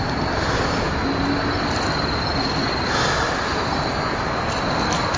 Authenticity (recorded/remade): recorded